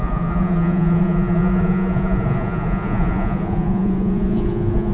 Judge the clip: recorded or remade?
remade